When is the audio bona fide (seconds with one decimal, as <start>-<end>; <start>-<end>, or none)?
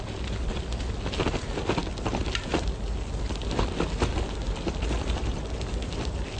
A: 0.0-6.4